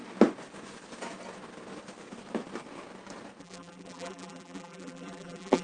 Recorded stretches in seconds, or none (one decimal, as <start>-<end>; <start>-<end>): 0.0-3.4